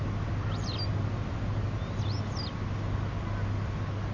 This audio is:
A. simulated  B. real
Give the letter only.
B